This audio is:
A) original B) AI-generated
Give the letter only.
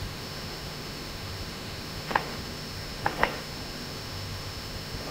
B